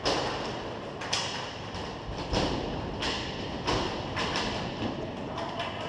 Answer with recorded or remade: recorded